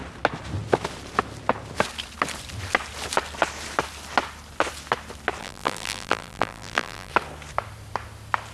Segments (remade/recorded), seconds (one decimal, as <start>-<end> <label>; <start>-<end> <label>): 0.0-5.4 recorded; 5.4-7.1 remade; 7.1-8.5 recorded